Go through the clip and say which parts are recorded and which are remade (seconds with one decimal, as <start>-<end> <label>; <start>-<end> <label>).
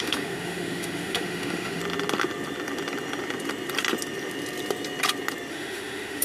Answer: 0.0-1.8 remade; 1.8-5.5 recorded; 5.5-6.2 remade